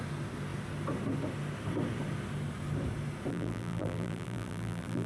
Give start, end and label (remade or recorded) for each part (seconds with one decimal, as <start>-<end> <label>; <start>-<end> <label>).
0.0-3.3 recorded; 3.3-5.1 remade